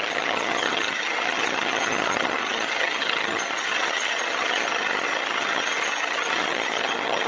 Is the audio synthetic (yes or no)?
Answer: yes